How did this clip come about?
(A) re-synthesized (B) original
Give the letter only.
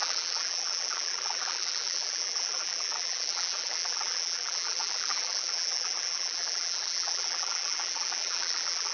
A